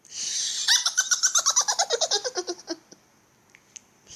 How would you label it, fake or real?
real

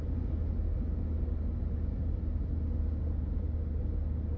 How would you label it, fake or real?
real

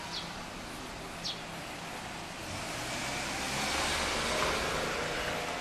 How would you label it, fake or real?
real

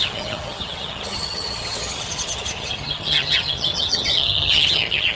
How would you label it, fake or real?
fake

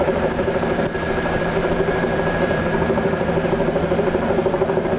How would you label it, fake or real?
fake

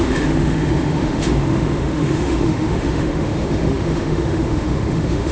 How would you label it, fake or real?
fake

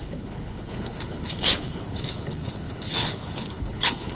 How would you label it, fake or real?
fake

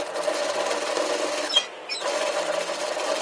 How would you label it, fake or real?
real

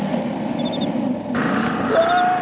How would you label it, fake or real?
real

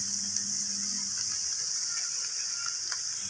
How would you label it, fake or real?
real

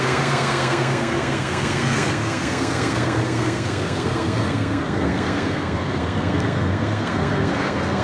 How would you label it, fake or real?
fake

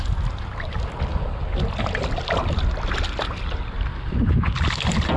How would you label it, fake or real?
real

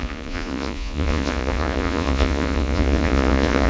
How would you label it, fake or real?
fake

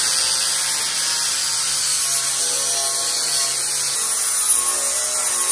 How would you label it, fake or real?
real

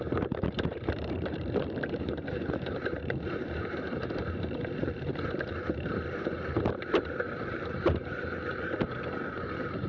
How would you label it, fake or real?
fake